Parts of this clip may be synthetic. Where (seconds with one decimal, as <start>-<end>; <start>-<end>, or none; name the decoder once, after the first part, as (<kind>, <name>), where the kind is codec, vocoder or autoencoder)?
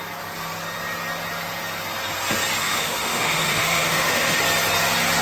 2.6-4.4 (autoencoder, DAC-VAE)